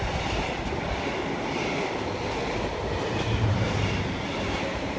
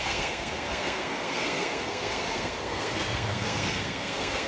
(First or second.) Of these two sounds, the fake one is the second